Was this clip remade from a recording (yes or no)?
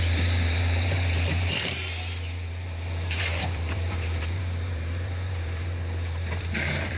yes